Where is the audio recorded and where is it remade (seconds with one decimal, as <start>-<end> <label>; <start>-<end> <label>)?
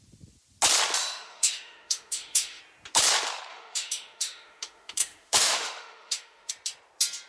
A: 0.0-1.0 recorded; 1.0-2.6 remade; 2.6-3.5 recorded; 3.5-6.5 remade; 6.5-7.3 recorded